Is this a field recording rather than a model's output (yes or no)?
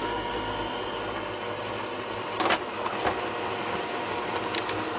yes